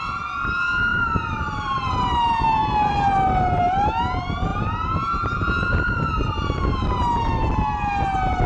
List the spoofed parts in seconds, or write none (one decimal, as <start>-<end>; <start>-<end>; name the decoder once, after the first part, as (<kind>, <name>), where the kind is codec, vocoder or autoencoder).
0.9-1.9 (vocoder, BigVGAN v2); 4.5-7.0